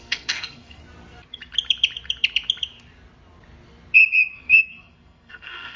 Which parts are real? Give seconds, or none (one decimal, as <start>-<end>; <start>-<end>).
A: 0.8-4.3